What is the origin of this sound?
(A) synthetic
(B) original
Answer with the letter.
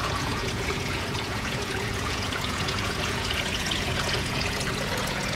A